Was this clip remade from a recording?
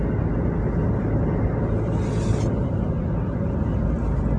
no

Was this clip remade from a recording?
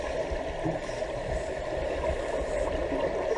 no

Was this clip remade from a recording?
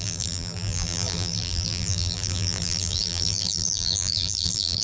yes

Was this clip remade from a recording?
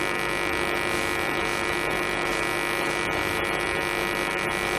no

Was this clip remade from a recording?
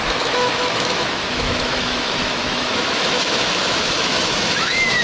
yes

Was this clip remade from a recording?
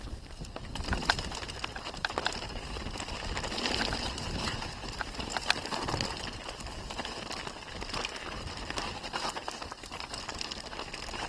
no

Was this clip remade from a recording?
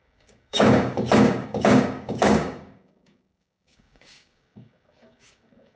yes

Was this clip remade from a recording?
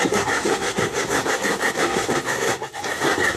yes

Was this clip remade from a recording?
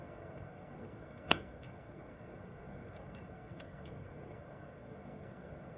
yes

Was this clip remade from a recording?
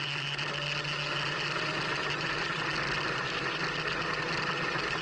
no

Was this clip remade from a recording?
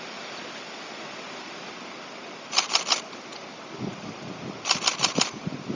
no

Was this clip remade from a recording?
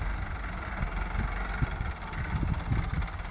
no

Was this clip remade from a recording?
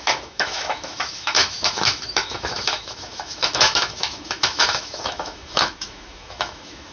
yes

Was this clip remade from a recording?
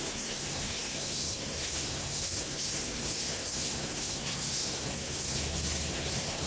yes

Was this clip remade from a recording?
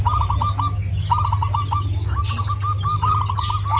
no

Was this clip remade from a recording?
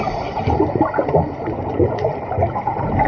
yes